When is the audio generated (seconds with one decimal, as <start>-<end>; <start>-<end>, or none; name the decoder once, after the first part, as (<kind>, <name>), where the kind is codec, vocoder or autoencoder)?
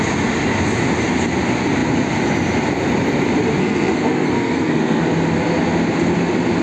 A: 3.6-5.0 (codec, SNAC)